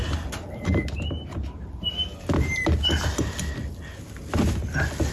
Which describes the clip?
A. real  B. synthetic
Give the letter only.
A